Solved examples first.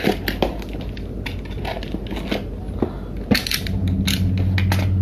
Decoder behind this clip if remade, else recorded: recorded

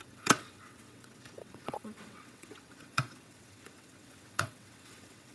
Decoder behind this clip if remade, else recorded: remade, vocoder, WaveNeXt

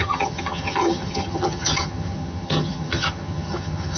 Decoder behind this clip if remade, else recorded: remade, vocoder, HiFi-GAN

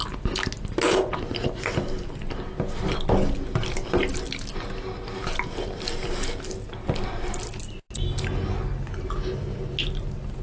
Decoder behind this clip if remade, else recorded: recorded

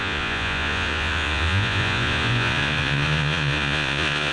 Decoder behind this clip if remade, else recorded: remade, vocoder, Vocos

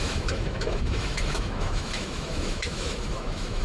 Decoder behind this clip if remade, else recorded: remade, autoencoder, DAC-VAE